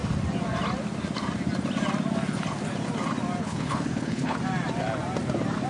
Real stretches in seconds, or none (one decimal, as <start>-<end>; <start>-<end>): 0.0-3.4; 4.4-5.7